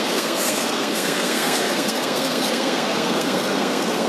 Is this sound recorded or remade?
remade